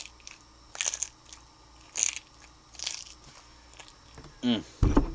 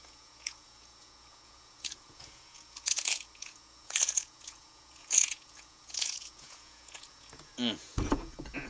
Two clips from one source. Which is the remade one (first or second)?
second